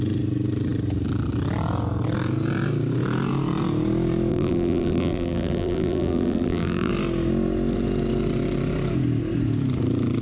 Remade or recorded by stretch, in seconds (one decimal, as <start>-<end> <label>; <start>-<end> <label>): 0.0-4.3 recorded; 4.3-6.9 remade; 6.9-10.2 recorded